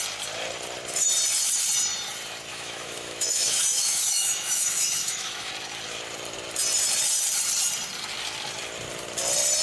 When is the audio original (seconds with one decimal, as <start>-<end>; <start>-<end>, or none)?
0.0-2.5; 5.5-9.6